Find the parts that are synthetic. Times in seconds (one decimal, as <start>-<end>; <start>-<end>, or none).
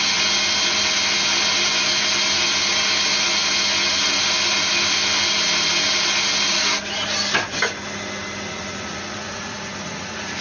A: 8.5-10.4